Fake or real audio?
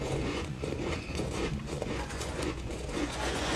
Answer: fake